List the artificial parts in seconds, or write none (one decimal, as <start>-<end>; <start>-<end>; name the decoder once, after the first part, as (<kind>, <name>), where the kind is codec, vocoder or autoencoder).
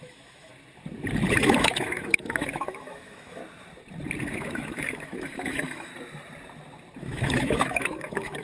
0.0-0.5 (autoencoder, DAC-VAE); 1.3-3.4; 4.2-5.9; 7.0-8.4